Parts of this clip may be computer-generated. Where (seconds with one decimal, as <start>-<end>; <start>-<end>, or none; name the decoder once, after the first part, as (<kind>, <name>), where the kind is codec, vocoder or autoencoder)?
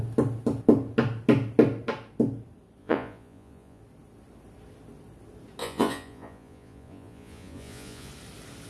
2.8-3.8 (vocoder, Vocos); 5.6-8.1